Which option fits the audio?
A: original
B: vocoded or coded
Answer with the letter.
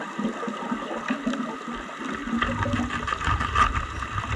A